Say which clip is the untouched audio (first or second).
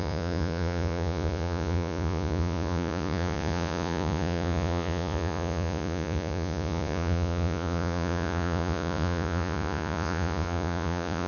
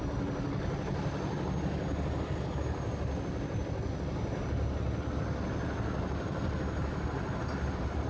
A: second